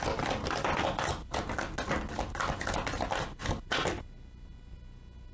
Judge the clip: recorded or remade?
recorded